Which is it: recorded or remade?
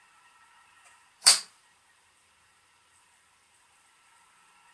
remade